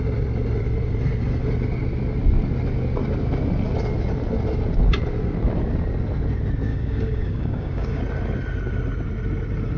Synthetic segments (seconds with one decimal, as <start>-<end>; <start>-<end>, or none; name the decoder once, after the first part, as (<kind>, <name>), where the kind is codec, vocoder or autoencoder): 6.7-8.0 (codec, DAC)